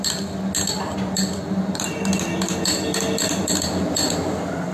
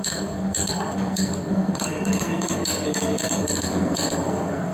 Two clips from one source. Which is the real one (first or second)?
first